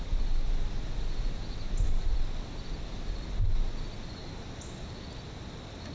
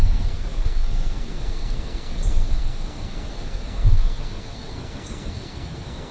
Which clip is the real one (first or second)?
first